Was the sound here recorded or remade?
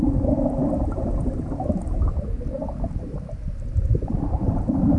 remade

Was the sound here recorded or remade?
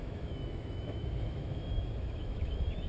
remade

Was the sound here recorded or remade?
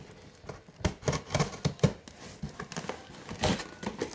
recorded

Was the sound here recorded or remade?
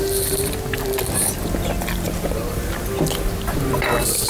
recorded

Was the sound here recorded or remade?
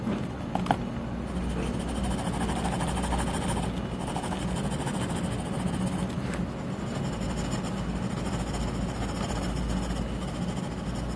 recorded